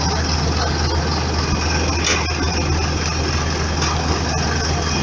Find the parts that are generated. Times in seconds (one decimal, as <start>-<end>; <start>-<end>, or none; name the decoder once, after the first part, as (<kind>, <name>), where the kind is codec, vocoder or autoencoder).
none